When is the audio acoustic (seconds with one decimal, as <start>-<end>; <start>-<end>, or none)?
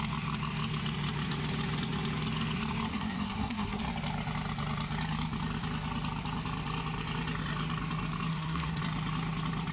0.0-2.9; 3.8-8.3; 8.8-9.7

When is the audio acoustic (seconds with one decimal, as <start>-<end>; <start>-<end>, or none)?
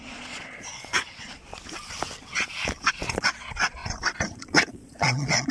1.5-2.9; 3.8-4.4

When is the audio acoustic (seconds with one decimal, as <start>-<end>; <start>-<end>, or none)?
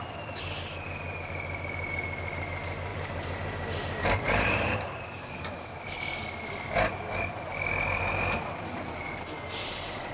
0.0-2.9; 5.2-10.1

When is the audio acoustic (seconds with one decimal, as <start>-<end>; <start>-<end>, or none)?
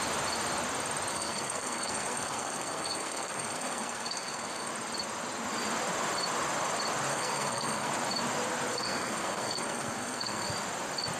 0.0-1.1; 4.7-7.1; 7.9-8.7; 10.5-11.2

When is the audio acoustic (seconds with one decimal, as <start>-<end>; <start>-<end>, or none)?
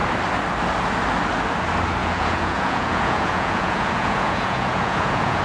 0.0-2.0